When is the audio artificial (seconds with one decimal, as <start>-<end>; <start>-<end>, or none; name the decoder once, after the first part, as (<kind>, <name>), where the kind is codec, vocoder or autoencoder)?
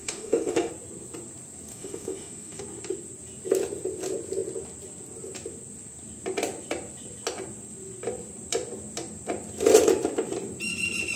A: 0.0-0.7 (autoencoder, DAC-VAE); 1.7-2.6